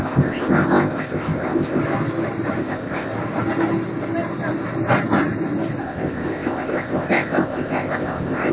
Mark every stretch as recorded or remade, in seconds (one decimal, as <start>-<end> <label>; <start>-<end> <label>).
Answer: 0.0-1.8 remade; 1.8-2.6 recorded; 2.6-3.1 remade; 3.1-5.8 recorded; 5.8-8.5 remade